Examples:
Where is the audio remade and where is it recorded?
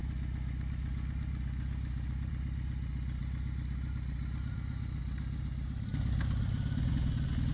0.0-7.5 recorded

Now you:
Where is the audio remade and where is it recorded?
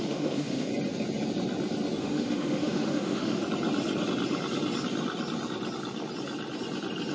0.0-0.7 remade; 0.7-2.0 recorded; 2.0-3.4 remade; 3.4-7.1 recorded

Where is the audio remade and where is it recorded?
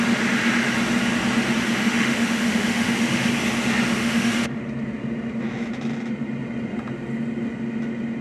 0.0-1.8 recorded; 1.8-3.3 remade; 3.3-4.0 recorded; 4.0-4.6 remade; 4.6-8.2 recorded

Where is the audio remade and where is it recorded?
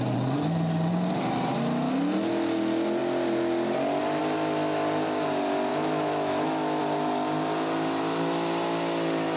0.0-5.7 recorded; 5.7-6.8 remade; 6.8-9.4 recorded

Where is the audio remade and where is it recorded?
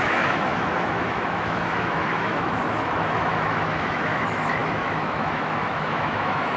0.0-6.6 remade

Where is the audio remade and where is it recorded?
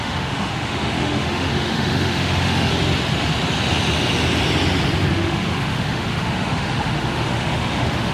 0.0-2.7 remade; 2.7-5.1 recorded; 5.1-8.1 remade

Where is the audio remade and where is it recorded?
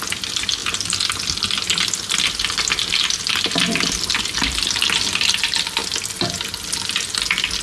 0.0-7.6 recorded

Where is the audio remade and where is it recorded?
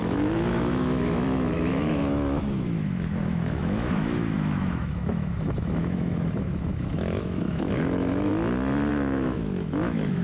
0.0-8.3 remade; 8.3-8.9 recorded; 8.9-10.2 remade